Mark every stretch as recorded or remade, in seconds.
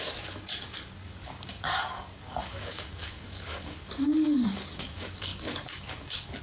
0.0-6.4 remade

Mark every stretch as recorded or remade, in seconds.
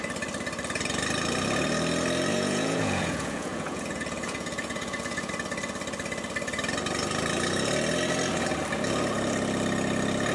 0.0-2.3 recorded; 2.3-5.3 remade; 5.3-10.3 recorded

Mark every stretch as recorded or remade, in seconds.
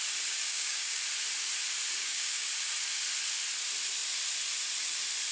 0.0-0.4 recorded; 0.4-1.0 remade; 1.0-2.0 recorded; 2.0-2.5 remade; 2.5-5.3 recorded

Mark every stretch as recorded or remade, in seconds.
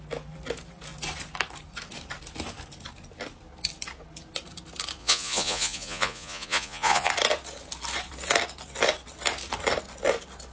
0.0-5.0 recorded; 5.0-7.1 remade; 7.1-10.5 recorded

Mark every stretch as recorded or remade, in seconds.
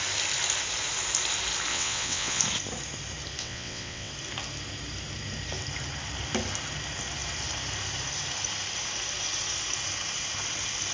0.0-1.7 recorded; 1.7-2.4 remade; 2.4-3.4 recorded; 3.4-4.1 remade; 4.1-10.9 recorded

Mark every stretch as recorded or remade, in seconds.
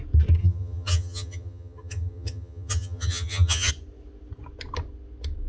0.0-0.4 recorded; 0.4-3.7 remade; 3.7-5.5 recorded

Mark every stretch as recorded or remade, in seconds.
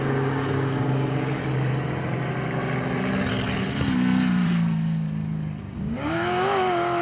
0.0-1.4 remade; 1.4-5.6 recorded; 5.6-7.0 remade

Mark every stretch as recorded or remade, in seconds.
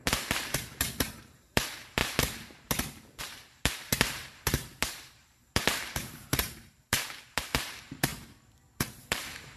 0.0-8.1 remade; 8.1-9.0 recorded; 9.0-9.6 remade